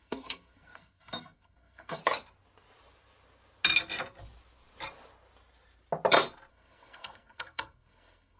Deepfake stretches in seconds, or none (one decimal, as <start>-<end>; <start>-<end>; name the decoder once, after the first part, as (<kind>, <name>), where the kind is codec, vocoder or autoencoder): 0.0-2.0 (codec, SNAC); 6.5-8.4